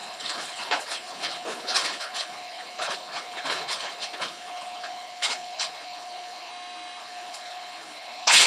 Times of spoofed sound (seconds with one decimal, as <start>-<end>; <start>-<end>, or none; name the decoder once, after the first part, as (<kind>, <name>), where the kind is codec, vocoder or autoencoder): 0.0-6.5 (codec, HILCodec); 7.0-8.5